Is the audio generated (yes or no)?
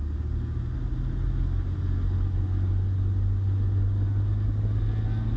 no